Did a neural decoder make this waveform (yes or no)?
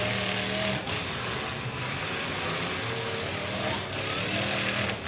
no